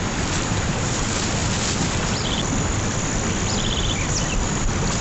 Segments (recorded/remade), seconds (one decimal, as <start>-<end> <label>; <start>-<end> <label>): 0.0-5.0 recorded